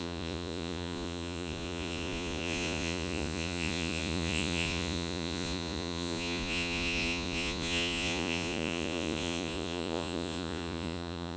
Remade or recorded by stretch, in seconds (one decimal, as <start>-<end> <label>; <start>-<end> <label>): 0.0-11.4 remade